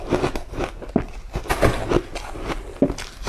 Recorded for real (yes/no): yes